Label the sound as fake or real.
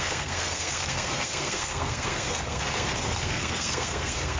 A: fake